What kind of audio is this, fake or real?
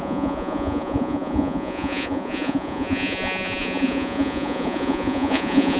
fake